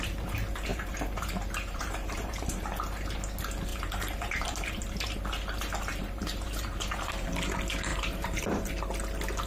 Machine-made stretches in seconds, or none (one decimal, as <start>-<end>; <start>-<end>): 0.7-2.6; 3.7-5.2; 5.9-7.3; 7.9-8.7